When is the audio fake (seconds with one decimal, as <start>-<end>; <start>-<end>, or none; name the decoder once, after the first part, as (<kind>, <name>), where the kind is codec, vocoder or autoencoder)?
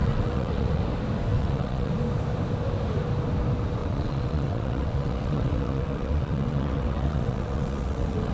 0.0-0.8 (vocoder, WaveNeXt); 1.3-1.9; 3.8-8.3